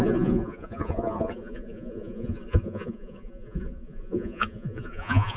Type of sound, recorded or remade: remade